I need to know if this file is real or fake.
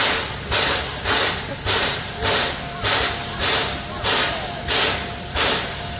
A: real